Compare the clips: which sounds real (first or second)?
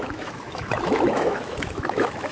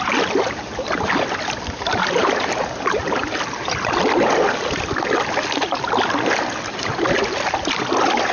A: second